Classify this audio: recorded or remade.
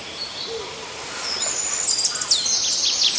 recorded